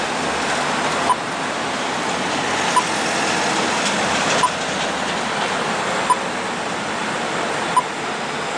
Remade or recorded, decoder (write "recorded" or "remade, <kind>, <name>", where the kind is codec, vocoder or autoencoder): recorded